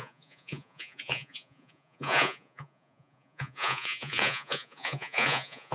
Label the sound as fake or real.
fake